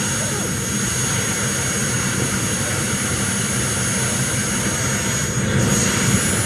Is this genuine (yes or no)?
yes